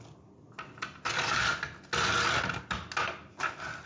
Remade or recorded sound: recorded